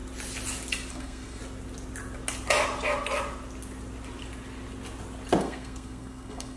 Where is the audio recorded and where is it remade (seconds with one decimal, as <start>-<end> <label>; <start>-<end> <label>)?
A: 0.0-0.9 recorded; 0.9-1.4 remade; 1.4-5.4 recorded; 5.4-6.6 remade